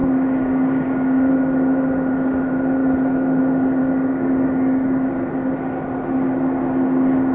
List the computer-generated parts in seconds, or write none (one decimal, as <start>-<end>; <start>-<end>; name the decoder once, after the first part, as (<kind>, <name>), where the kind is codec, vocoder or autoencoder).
0.0-1.3 (codec, DAC); 3.8-5.1